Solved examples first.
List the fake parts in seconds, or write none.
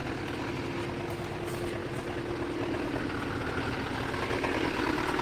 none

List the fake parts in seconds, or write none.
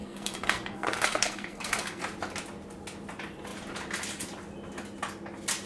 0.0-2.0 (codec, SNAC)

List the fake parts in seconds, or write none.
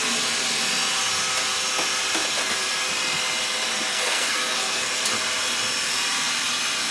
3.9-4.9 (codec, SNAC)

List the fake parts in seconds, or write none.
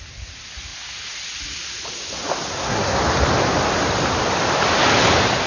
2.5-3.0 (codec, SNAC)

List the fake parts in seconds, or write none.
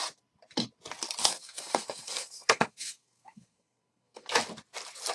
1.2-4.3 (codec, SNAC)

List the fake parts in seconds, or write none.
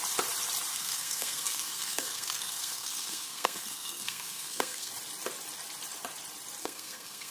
0.7-4.9 (codec, SNAC); 6.6-7.3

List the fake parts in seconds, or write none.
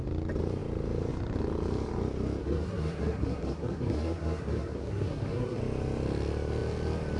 2.4-5.6 (codec, SNAC)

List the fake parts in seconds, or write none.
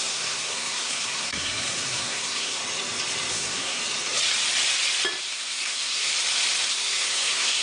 0.0-2.6 (codec, SNAC); 3.3-3.8; 5.3-6.1; 6.7-7.6